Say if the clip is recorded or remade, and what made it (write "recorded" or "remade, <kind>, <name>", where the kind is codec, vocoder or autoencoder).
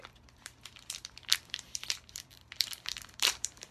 remade, vocoder, BigVGAN v2